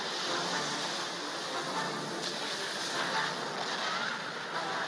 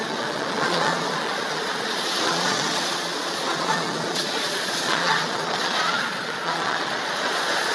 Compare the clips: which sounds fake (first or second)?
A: second